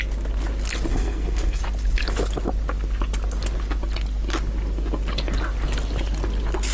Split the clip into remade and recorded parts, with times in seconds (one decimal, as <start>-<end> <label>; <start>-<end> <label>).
0.0-0.9 recorded; 0.9-1.6 remade; 1.6-6.7 recorded